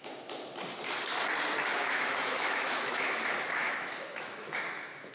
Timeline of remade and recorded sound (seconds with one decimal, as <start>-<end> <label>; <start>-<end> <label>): 0.0-1.7 recorded; 1.7-5.1 remade